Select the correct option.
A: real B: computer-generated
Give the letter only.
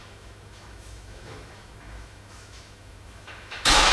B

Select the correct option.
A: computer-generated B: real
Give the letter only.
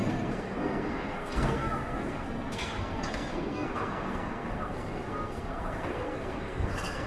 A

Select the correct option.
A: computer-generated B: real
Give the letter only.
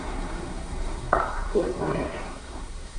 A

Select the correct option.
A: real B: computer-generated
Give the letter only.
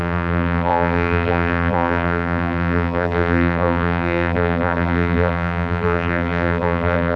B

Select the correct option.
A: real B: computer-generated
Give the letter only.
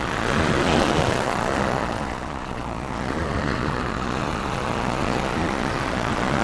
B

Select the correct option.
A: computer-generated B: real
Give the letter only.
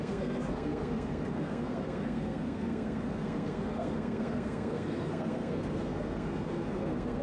A